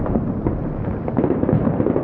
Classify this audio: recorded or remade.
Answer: remade